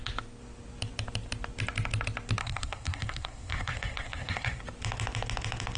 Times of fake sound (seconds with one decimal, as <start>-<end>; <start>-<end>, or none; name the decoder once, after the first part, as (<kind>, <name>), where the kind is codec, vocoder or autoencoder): 2.4-4.6 (codec, SNAC)